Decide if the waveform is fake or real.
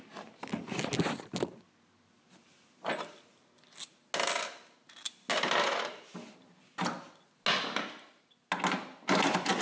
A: real